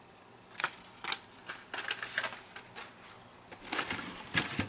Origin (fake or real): real